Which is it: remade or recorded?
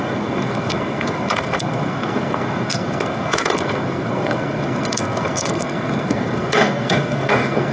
remade